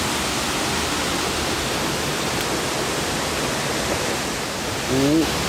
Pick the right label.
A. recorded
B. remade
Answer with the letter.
A